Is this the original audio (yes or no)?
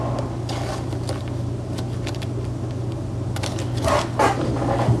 yes